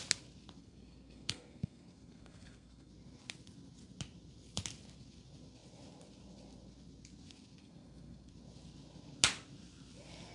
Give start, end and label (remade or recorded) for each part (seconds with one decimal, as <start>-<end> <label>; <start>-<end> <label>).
0.0-0.6 recorded; 0.6-2.9 remade; 2.9-7.6 recorded; 7.6-8.3 remade; 8.3-10.3 recorded